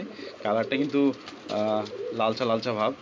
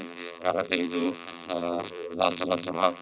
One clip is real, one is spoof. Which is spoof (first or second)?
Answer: second